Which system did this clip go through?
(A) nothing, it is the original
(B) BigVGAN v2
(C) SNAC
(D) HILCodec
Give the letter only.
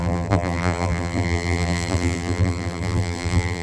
B